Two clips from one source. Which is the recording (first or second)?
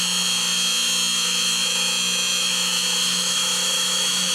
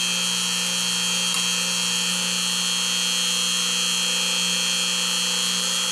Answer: second